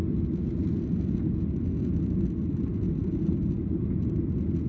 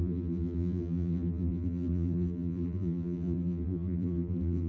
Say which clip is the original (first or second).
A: first